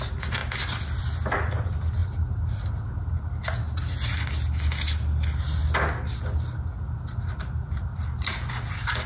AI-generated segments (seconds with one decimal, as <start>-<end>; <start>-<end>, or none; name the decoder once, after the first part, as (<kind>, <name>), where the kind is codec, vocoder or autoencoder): none